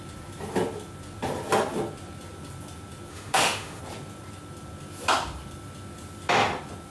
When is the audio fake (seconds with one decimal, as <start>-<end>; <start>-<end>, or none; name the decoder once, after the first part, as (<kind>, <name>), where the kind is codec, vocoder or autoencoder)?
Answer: 3.1-3.8 (autoencoder, DAC-VAE)